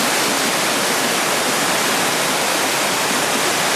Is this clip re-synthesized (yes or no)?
no